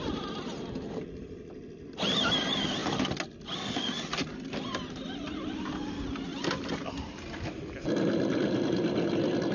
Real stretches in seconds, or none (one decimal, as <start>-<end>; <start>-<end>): 0.0-9.5